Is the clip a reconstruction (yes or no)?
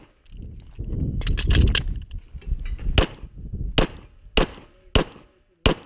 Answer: no